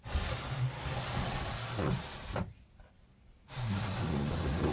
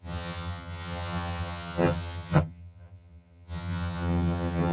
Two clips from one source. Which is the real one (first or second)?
first